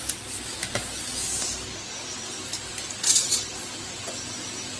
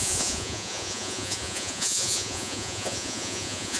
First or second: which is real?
first